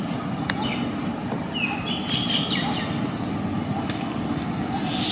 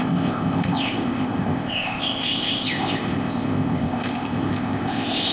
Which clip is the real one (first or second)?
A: first